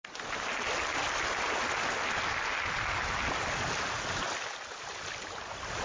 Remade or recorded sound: recorded